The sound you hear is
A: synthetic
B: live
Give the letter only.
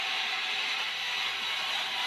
B